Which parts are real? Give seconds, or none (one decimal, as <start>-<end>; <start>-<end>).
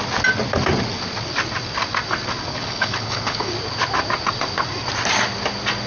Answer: 0.0-2.5; 3.5-5.9